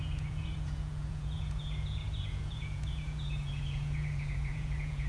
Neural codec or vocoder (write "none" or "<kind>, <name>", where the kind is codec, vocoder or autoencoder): vocoder, Vocos